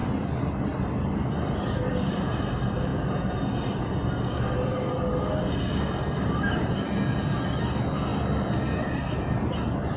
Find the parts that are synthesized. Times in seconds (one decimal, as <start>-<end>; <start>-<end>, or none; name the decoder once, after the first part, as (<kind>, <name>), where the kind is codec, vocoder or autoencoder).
none